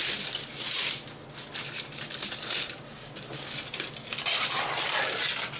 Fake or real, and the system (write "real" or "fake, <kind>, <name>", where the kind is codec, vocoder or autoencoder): real